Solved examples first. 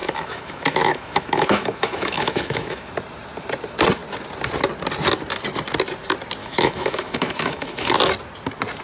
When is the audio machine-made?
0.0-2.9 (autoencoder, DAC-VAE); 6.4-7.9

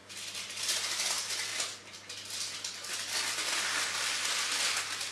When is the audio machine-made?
none

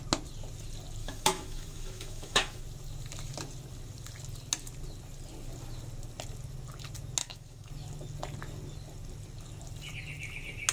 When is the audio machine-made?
1.0-2.6 (autoencoder, DAC-VAE); 7.2-7.7

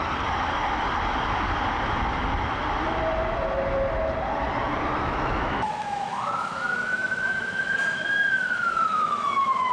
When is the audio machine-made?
5.0-9.7 (autoencoder, DAC-VAE)

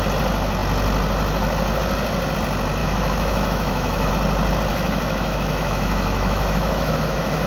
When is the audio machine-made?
2.8-4.1 (autoencoder, DAC-VAE); 4.7-7.5

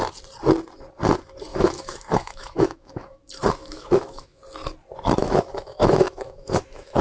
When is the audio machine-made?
1.5-3.2 (autoencoder, DAC-VAE); 3.6-4.4; 5.2-7.0